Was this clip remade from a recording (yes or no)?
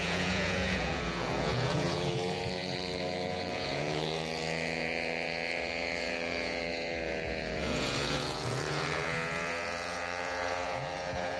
yes